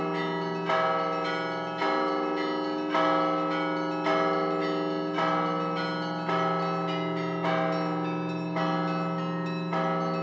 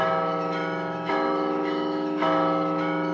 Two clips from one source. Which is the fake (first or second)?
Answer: second